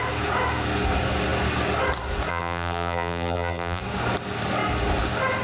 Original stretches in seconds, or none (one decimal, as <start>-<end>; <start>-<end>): 0.0-2.3; 3.8-5.4